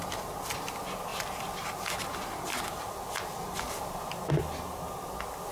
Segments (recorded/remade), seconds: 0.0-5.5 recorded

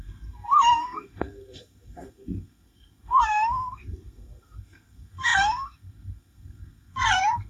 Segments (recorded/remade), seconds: 0.0-7.5 remade